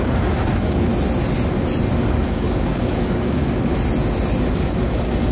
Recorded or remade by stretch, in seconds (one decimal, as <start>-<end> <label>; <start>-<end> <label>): 0.0-0.9 remade; 0.9-2.0 recorded; 2.0-3.7 remade; 3.7-4.5 recorded; 4.5-5.3 remade